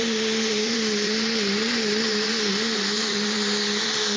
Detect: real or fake fake